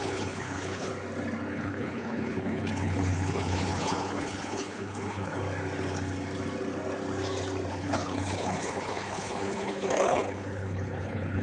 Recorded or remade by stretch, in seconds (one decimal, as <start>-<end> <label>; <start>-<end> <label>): 0.0-0.9 remade; 0.9-1.5 recorded; 1.5-5.4 remade; 5.4-7.7 recorded; 7.7-11.4 remade